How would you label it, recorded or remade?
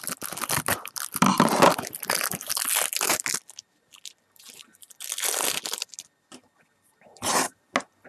recorded